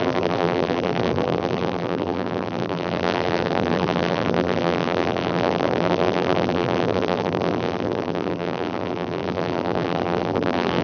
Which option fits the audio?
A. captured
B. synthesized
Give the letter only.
B